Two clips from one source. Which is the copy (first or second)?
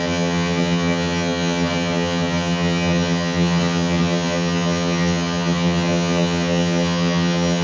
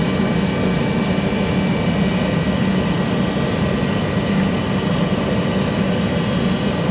first